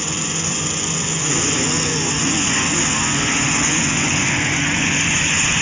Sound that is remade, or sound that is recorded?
remade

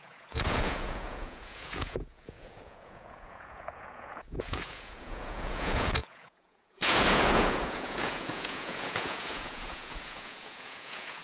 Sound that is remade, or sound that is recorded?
remade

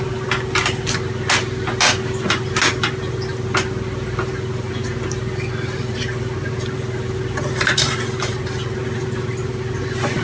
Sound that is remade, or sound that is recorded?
recorded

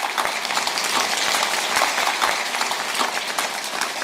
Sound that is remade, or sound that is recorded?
recorded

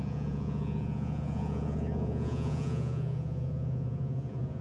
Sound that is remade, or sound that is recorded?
remade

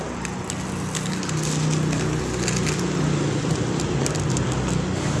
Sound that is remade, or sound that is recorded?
recorded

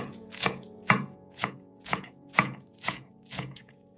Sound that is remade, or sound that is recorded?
remade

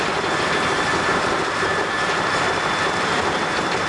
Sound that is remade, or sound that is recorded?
recorded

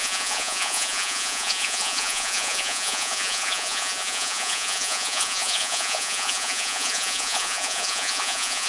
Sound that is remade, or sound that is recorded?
remade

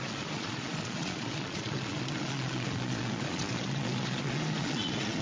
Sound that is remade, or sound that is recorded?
remade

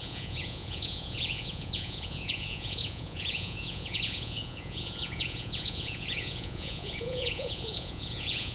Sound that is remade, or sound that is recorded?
remade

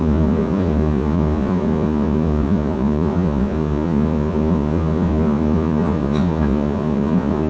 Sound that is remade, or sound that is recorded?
remade